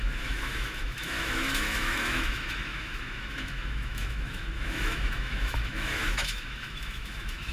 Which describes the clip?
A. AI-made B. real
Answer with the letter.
A